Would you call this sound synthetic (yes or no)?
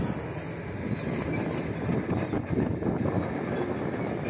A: no